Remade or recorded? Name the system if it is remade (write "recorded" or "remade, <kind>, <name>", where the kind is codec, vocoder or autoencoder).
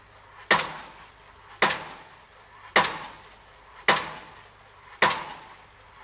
recorded